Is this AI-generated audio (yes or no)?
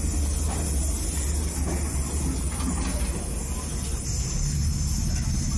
no